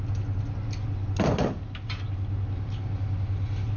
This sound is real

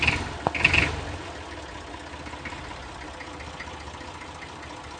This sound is real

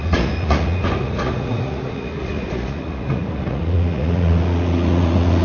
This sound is fake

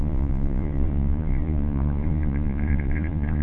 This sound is fake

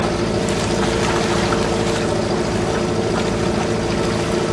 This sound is real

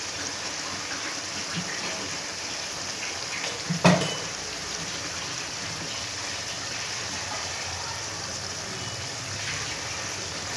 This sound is real